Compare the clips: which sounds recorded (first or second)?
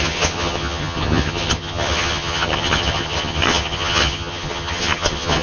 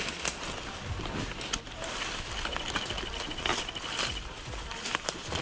second